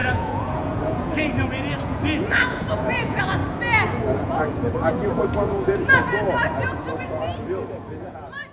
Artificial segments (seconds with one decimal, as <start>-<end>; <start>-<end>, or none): 0.0-3.4; 4.0-8.5